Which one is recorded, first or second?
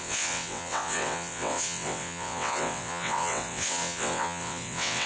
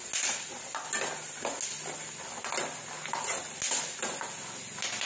second